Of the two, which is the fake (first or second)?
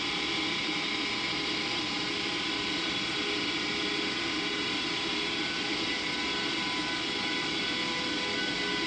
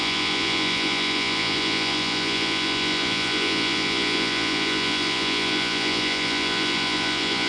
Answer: second